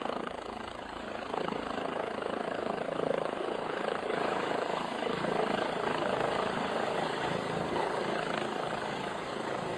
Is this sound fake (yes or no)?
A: yes